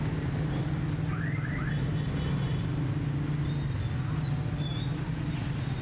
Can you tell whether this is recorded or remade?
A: recorded